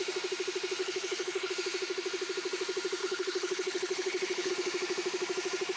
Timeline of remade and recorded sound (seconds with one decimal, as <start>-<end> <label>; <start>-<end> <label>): 0.0-0.8 recorded; 0.8-1.5 remade; 1.5-3.0 recorded; 3.0-4.5 remade; 4.5-5.8 recorded